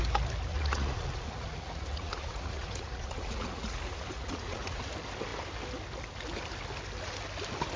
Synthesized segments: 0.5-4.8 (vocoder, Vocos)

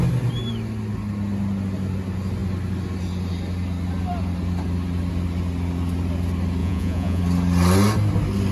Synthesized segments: 6.6-7.2 (vocoder, Vocos)

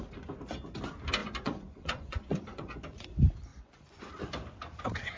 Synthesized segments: 1.2-2.8 (vocoder, Vocos); 3.5-4.1

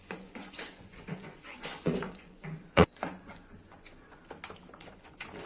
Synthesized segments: 0.0-4.2 (vocoder, Vocos); 4.7-5.5

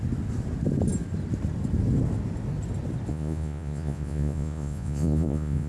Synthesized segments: 3.1-5.7 (vocoder, Vocos)